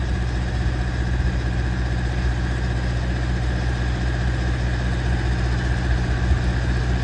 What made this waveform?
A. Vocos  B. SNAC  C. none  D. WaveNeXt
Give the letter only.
C